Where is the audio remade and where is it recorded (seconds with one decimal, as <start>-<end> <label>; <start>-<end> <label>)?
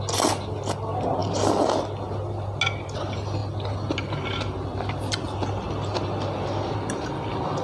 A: 0.0-7.6 recorded